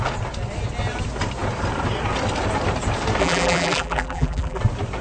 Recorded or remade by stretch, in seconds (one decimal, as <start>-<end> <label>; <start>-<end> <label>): 0.0-3.2 recorded; 3.2-4.6 remade; 4.6-5.0 recorded